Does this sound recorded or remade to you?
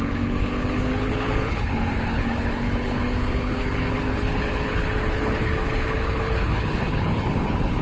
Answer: remade